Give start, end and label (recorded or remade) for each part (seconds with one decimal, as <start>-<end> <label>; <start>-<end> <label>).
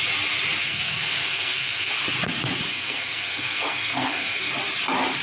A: 0.0-0.6 recorded; 0.6-1.9 remade; 1.9-2.7 recorded; 2.7-4.5 remade; 4.5-5.2 recorded